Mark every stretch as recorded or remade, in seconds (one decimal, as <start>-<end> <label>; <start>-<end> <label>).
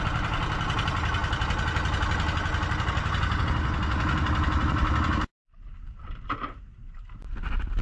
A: 0.0-7.8 recorded